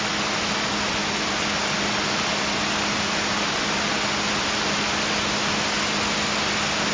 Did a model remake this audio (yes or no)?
no